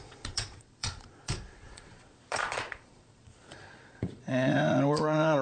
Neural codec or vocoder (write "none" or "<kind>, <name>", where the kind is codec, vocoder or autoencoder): vocoder, Vocos